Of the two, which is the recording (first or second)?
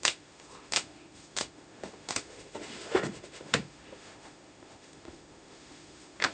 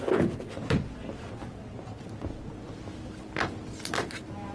second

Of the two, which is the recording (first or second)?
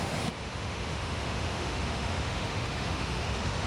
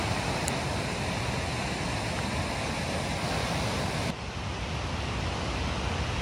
second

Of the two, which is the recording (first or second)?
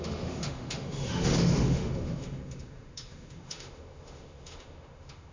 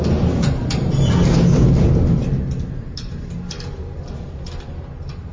second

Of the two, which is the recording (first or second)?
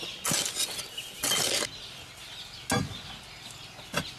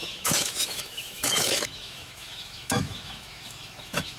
first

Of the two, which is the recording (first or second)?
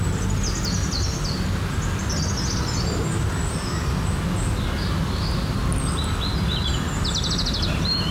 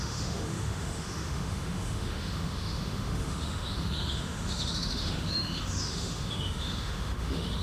first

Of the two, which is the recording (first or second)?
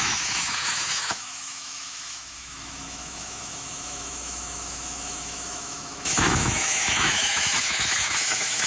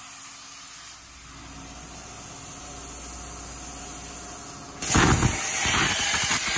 second